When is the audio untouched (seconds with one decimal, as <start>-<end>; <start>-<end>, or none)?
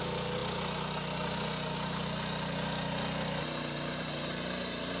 0.0-5.0